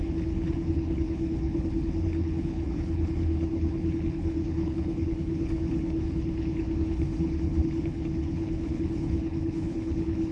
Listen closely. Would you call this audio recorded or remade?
remade